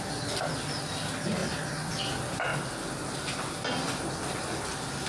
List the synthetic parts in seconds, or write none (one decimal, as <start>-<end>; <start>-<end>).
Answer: none